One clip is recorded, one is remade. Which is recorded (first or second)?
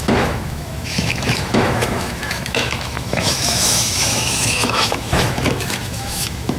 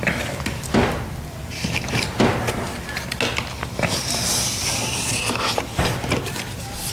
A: second